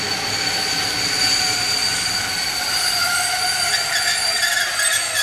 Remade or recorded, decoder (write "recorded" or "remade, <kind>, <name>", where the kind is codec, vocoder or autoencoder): recorded